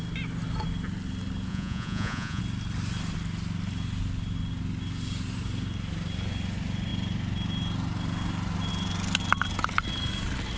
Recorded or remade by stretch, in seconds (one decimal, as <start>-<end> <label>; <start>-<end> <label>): 0.0-1.5 recorded; 1.5-2.4 remade; 2.4-10.6 recorded